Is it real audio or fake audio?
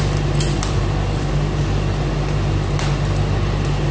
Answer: real